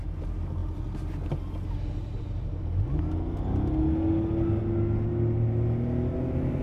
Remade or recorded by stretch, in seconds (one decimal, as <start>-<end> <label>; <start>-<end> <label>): 0.0-6.6 recorded